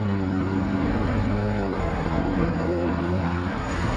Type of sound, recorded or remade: remade